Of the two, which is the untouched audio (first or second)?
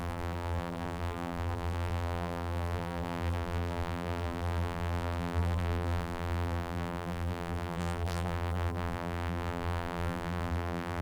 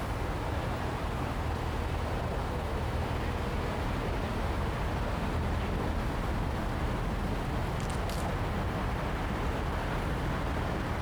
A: second